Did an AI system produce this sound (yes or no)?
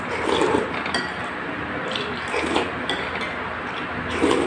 no